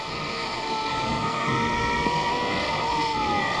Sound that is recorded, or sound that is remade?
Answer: remade